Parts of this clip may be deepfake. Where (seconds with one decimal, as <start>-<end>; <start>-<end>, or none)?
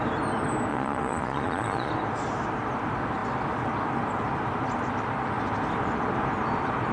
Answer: 0.7-1.9